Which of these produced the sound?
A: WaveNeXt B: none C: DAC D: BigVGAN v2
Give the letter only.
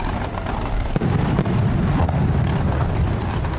B